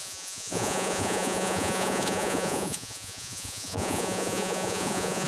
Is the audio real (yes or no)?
no